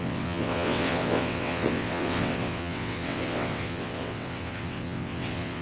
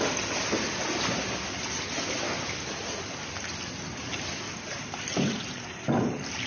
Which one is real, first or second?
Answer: second